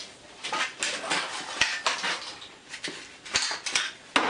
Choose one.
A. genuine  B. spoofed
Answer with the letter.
A